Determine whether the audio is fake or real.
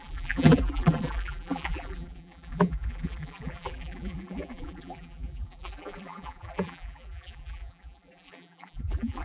fake